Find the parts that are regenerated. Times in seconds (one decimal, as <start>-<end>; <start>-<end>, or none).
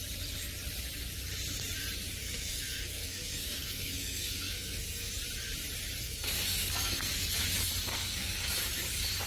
2.2-5.1; 6.0-7.4; 7.9-8.5